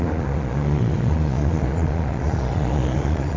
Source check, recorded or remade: remade